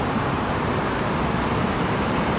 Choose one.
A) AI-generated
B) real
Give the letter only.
A